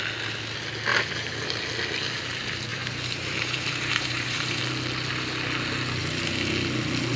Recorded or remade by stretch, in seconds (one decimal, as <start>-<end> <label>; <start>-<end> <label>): 0.0-2.7 recorded; 2.7-4.6 remade; 4.6-6.0 recorded; 6.0-6.5 remade; 6.5-7.2 recorded